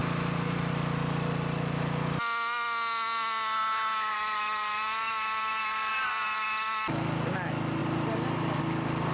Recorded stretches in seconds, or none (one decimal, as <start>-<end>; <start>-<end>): 0.7-4.1; 5.9-7.8; 8.6-9.1